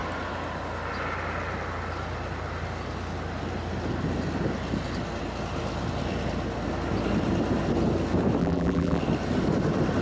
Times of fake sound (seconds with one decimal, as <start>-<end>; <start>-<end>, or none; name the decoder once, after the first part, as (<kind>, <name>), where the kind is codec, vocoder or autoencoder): 8.4-9.0 (vocoder, BigVGAN v2)